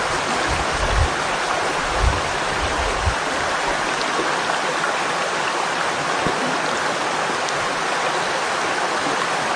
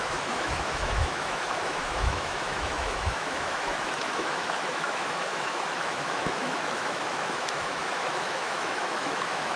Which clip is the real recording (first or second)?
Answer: first